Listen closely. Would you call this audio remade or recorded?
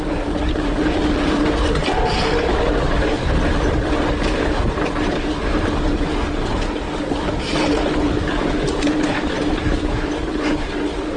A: recorded